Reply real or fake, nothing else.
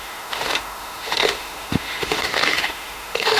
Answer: fake